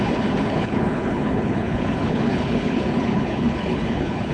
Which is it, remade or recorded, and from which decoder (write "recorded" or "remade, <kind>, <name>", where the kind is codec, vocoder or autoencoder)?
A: remade, codec, HILCodec